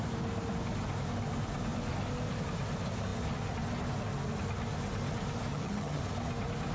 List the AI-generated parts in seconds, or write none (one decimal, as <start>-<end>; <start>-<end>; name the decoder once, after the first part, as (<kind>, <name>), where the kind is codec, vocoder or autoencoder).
5.5-6.0 (vocoder, HiFi-GAN)